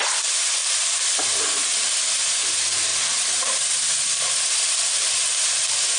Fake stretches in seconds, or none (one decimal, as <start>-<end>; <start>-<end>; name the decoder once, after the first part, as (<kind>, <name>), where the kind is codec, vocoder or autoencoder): none

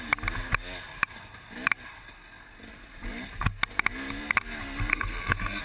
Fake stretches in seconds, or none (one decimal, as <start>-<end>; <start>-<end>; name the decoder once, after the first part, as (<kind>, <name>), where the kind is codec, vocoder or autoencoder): 4.9-5.6 (codec, SNAC)

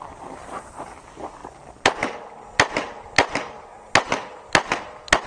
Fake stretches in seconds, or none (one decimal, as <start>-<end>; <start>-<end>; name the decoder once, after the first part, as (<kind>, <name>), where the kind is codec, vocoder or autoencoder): none

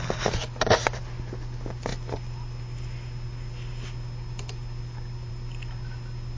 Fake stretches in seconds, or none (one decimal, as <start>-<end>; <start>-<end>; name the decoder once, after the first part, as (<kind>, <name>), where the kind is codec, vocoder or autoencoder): none

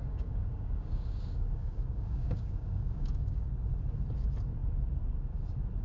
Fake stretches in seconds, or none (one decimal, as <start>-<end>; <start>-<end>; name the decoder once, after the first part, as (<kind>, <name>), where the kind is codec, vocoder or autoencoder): 0.0-3.5 (codec, DAC)

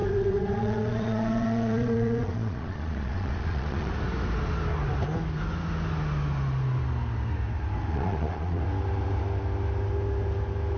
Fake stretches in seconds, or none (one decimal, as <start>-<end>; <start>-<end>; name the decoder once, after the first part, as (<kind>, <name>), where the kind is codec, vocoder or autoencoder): 0.0-3.9 (vocoder, Vocos); 7.9-8.6

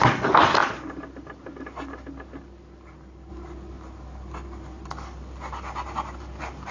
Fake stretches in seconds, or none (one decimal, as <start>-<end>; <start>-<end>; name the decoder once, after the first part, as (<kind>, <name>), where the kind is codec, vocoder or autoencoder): none

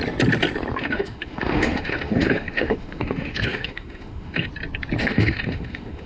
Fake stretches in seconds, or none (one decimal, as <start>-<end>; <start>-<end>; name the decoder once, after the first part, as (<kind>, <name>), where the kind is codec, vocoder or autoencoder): 0.8-4.5 (autoencoder, DAC-VAE); 5.0-6.1